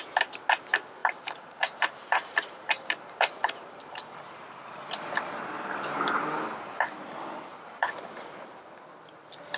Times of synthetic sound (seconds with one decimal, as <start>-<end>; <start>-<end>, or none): 1.0-4.2; 7.5-8.0